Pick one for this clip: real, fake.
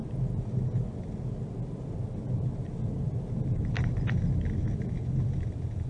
real